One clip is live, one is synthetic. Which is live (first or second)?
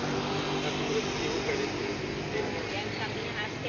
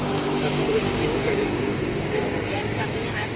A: first